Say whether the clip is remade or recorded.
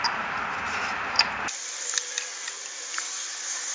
recorded